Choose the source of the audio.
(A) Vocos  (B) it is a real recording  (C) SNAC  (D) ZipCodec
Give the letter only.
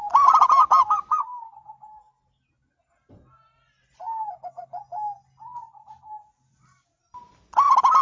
B